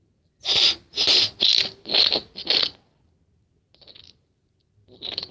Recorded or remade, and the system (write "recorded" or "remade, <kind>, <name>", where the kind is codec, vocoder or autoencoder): recorded